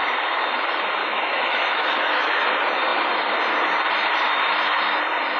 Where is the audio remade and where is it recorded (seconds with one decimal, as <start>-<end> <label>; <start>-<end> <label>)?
0.0-1.0 recorded; 1.0-2.4 remade; 2.4-5.4 recorded

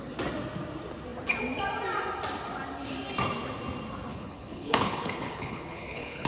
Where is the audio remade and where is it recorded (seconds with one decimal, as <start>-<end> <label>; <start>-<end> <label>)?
0.0-4.1 recorded; 4.1-6.3 remade